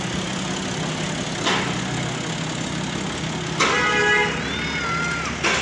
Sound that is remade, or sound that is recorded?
recorded